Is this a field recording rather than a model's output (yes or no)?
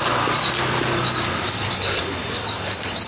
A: yes